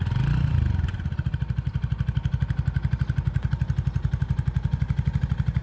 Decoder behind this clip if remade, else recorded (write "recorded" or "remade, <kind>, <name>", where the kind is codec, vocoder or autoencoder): recorded